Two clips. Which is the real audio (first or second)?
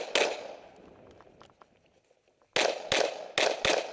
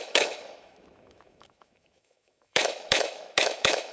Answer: first